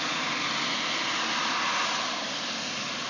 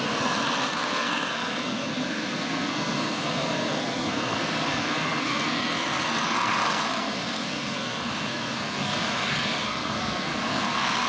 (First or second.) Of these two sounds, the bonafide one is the first